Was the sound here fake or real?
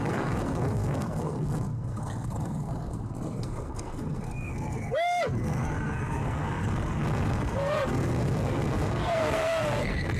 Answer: fake